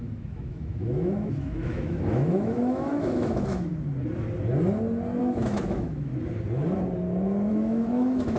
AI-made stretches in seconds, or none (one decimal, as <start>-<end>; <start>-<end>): 0.0-3.7; 5.2-6.1; 7.5-8.4